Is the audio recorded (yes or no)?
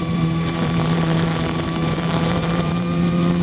no